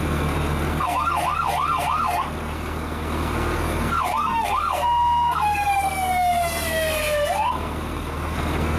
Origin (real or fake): fake